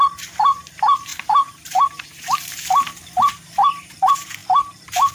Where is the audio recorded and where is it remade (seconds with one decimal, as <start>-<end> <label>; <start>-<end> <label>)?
0.0-5.1 remade

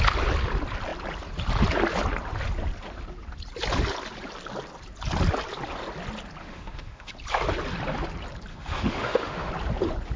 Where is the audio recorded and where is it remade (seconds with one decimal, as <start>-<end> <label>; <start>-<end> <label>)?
0.0-6.4 recorded; 6.4-7.1 remade; 7.1-8.5 recorded; 8.5-9.5 remade; 9.5-10.2 recorded

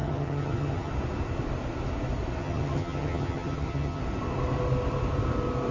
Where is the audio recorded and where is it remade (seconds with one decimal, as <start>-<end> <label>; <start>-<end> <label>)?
0.0-0.9 remade; 0.9-2.4 recorded; 2.4-4.0 remade; 4.0-5.7 recorded

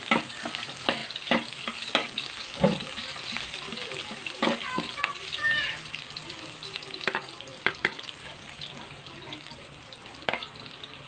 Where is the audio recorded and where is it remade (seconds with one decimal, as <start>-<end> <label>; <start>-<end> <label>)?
0.0-11.1 remade

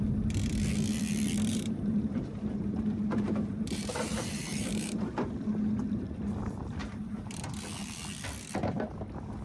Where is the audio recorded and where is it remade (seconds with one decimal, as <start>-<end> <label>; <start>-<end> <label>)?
0.0-1.5 recorded; 1.5-5.0 remade; 5.0-6.8 recorded; 6.8-7.5 remade; 7.5-9.4 recorded

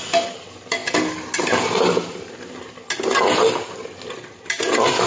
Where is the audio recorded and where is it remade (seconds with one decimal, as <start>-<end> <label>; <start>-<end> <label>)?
0.0-5.1 recorded

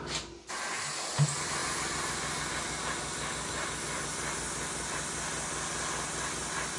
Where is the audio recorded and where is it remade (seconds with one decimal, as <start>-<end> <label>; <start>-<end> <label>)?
0.0-6.8 recorded

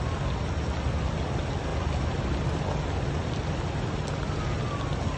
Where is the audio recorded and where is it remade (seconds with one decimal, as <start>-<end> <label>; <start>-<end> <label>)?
0.0-5.2 recorded